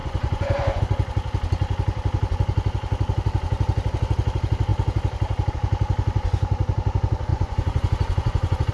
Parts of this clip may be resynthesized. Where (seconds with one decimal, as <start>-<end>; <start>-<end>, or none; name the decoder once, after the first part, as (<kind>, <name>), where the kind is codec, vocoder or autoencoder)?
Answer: 0.0-0.8 (vocoder, Vocos); 7.3-8.7